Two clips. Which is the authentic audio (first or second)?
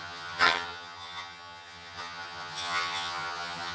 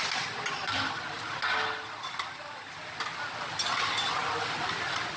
second